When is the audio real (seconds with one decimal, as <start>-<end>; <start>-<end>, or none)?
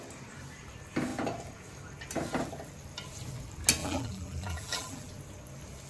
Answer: 0.0-3.8; 5.1-5.9